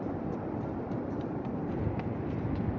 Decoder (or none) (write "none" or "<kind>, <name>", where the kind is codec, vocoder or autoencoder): none